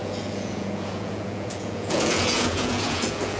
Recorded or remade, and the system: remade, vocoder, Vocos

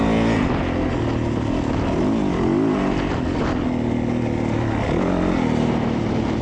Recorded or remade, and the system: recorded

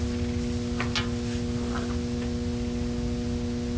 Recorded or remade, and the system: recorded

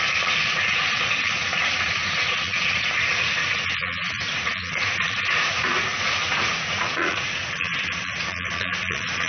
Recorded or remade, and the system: remade, vocoder, Vocos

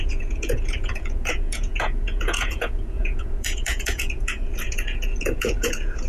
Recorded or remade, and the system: remade, vocoder, Vocos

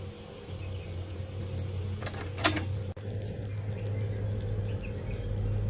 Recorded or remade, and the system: recorded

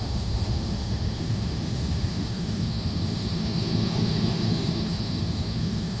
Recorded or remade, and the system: remade, autoencoder, DAC-VAE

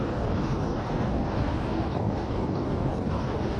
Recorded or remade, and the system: remade, codec, DAC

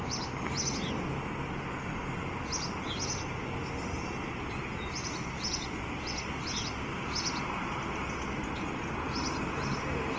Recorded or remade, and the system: recorded